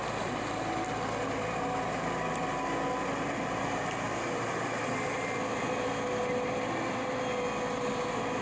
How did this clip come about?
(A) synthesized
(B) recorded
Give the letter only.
B